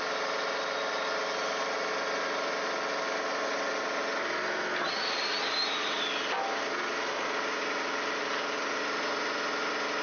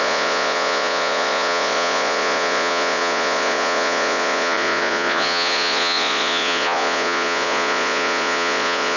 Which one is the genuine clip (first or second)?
first